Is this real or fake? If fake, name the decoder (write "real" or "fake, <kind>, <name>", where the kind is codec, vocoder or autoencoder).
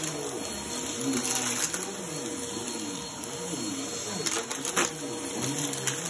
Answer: real